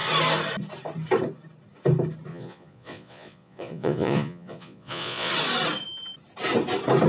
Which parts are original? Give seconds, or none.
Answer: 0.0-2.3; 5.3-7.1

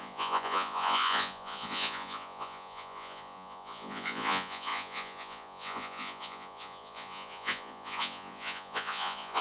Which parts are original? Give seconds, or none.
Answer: none

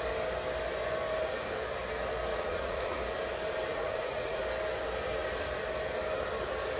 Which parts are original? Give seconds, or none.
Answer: 0.0-2.3; 3.0-3.7; 4.4-6.8

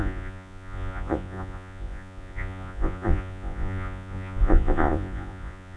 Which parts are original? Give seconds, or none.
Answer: none